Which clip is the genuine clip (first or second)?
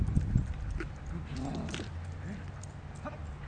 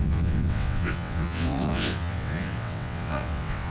first